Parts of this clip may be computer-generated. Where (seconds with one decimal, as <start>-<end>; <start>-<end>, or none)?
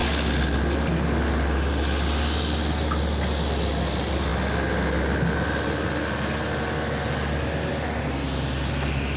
none